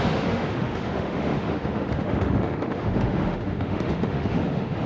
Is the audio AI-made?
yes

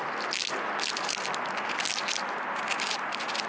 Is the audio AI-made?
no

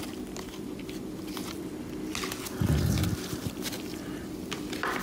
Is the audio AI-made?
no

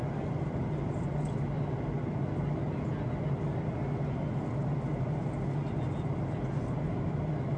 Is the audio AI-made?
no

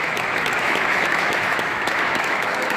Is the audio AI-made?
yes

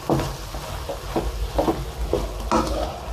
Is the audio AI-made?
no